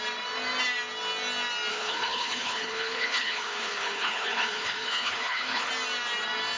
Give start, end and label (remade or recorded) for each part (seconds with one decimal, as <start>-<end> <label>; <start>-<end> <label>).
0.0-1.7 recorded; 1.7-5.7 remade; 5.7-6.6 recorded